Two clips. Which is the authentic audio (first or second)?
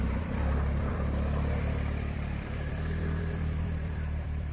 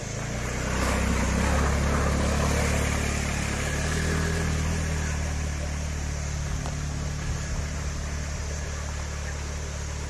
second